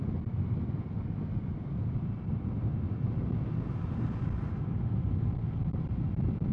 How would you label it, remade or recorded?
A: recorded